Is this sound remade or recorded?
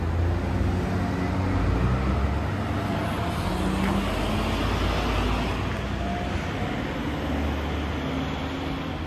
recorded